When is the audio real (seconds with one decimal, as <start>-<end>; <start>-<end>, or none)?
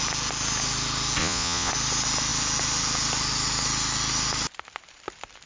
0.0-1.2; 1.7-5.5